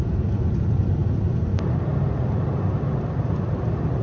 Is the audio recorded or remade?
recorded